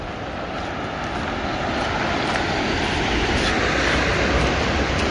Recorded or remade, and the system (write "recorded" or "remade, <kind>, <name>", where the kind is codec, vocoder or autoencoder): recorded